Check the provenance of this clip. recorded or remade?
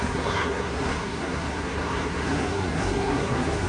remade